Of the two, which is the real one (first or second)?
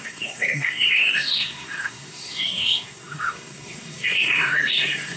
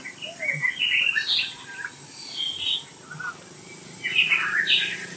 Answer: second